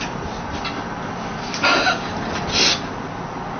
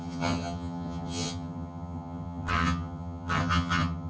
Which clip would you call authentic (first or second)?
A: first